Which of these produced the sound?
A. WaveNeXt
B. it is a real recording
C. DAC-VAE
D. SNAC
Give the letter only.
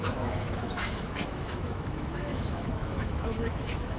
C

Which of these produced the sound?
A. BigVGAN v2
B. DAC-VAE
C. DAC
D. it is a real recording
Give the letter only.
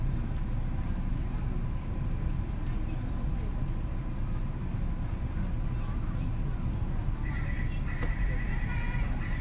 D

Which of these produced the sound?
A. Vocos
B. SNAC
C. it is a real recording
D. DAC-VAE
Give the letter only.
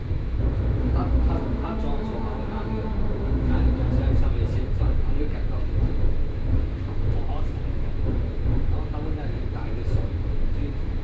D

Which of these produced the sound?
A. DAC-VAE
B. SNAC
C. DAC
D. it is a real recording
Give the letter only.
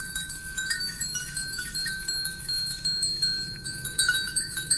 A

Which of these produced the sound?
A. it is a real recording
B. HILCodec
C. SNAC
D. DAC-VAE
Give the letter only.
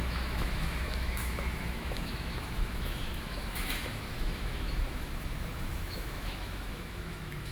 D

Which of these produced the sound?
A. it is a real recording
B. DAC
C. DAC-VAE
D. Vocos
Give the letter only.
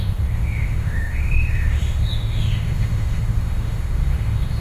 C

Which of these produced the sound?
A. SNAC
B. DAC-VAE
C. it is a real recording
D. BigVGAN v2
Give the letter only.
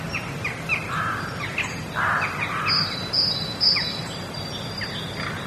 C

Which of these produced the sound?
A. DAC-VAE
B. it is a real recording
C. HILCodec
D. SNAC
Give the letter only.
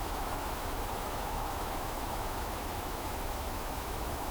A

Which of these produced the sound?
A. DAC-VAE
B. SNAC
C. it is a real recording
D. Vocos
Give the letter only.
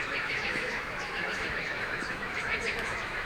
A